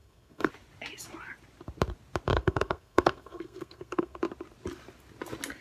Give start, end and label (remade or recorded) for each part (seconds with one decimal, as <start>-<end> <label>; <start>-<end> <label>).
0.0-0.5 remade; 0.5-2.3 recorded; 2.3-4.2 remade; 4.2-5.6 recorded